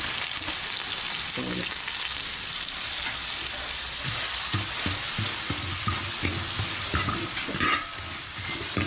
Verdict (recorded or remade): recorded